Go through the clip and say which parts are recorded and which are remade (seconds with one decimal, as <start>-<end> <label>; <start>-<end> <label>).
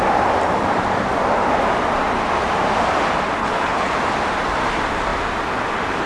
0.0-3.4 recorded; 3.4-3.9 remade; 3.9-6.1 recorded